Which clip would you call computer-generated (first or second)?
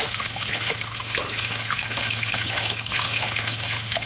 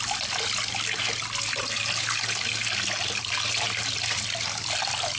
first